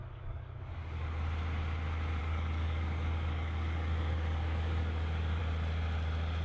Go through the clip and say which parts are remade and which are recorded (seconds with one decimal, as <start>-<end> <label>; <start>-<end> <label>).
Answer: 0.0-1.2 remade; 1.2-2.2 recorded; 2.2-5.4 remade; 5.4-6.4 recorded